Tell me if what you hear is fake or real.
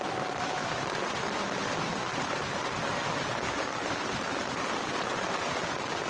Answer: real